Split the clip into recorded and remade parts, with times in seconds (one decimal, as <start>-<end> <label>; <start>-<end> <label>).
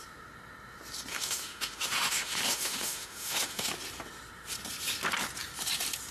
0.0-1.1 recorded; 1.1-3.7 remade; 3.7-6.1 recorded